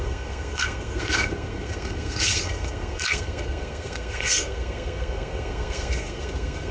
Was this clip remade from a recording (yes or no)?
yes